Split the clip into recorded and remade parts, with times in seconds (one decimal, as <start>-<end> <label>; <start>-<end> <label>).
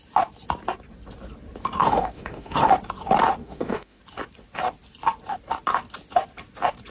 0.0-1.8 recorded; 1.8-2.7 remade; 2.7-3.4 recorded; 3.4-4.0 remade; 4.0-6.9 recorded